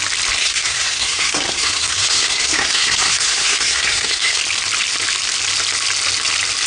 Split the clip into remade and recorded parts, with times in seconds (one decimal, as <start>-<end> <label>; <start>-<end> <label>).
0.0-0.4 recorded; 0.4-4.4 remade; 4.4-6.7 recorded